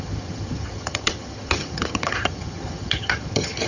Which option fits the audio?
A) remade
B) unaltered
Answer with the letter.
A